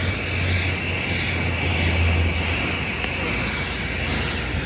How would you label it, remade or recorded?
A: recorded